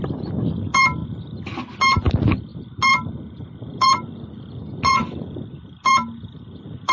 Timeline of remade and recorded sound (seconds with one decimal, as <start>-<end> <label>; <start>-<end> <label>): 0.0-6.9 recorded